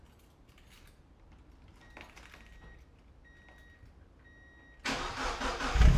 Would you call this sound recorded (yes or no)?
yes